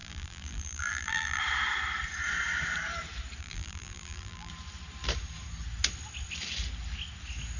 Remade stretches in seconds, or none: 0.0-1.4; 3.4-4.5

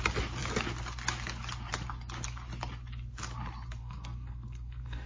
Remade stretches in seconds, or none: 3.8-5.1

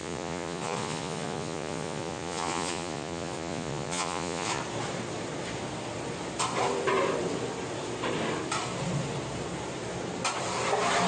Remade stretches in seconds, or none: 0.0-4.6

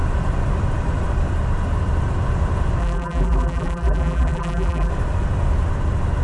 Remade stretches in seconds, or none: 2.8-4.9

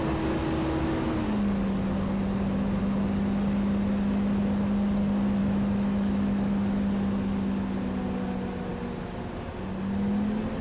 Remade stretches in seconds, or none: 5.4-6.8

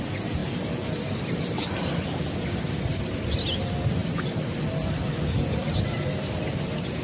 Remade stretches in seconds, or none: 0.0-0.4; 1.2-7.0